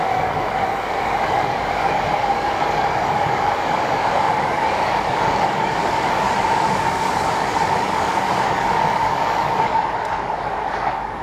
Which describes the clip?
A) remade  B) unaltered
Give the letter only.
A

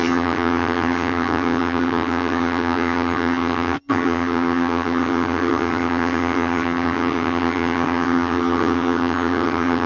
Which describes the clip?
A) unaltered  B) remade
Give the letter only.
B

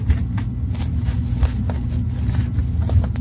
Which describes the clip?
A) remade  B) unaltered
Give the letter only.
B